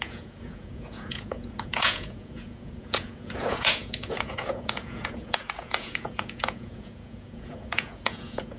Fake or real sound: fake